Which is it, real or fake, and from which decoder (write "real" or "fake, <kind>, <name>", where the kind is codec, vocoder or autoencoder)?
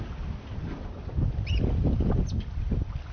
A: real